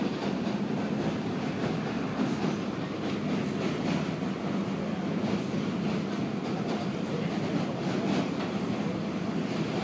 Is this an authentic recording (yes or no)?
yes